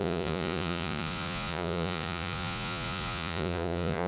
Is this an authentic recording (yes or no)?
no